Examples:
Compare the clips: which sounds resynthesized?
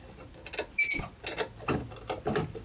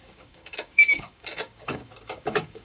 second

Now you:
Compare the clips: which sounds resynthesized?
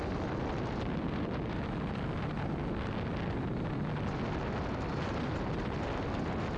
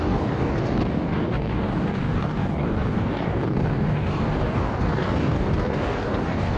second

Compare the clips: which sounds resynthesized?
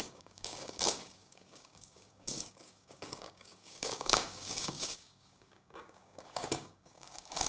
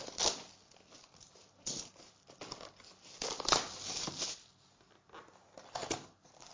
first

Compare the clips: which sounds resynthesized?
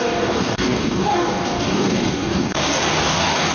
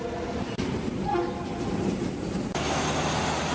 first